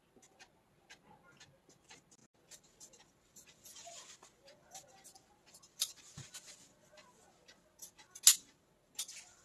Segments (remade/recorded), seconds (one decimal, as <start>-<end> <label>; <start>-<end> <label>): 0.0-9.4 recorded

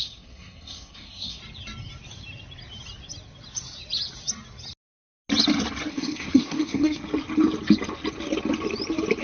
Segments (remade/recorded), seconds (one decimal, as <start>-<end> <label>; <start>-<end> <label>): 0.0-1.4 remade; 1.4-5.9 recorded; 5.9-7.0 remade; 7.0-9.2 recorded

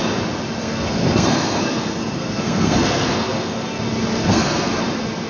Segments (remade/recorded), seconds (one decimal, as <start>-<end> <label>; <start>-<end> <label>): 0.0-0.6 recorded; 0.6-3.8 remade; 3.8-4.2 recorded; 4.2-4.8 remade; 4.8-5.3 recorded

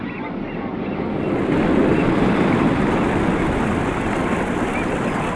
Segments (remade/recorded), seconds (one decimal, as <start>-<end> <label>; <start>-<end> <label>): 0.0-5.4 recorded

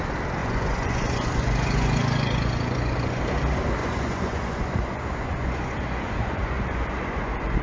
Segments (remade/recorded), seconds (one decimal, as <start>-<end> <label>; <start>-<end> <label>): 0.0-0.4 recorded; 0.4-3.2 remade; 3.2-3.8 recorded; 3.8-7.6 remade

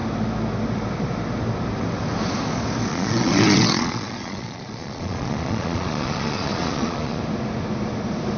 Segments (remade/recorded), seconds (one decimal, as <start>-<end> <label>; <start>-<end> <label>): 0.0-2.9 recorded; 2.9-7.2 remade; 7.2-8.4 recorded

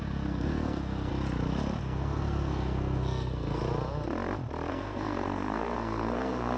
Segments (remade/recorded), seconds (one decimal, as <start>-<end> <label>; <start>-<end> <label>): 0.0-1.1 remade; 1.1-1.8 recorded; 1.8-3.6 remade; 3.6-4.7 recorded; 4.7-6.6 remade